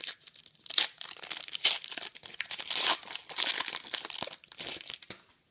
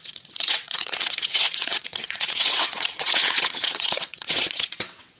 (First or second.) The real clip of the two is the first